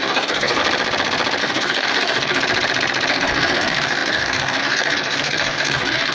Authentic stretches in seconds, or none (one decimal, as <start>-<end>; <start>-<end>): 0.6-1.4; 2.4-3.1